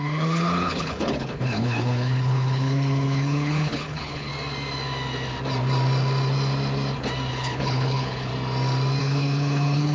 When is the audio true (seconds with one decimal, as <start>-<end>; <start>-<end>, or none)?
4.3-7.3; 8.3-9.0